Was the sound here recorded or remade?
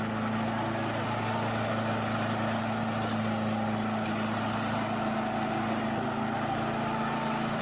recorded